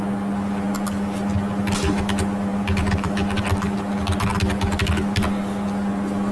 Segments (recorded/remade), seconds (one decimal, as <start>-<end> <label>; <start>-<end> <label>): 0.0-6.3 recorded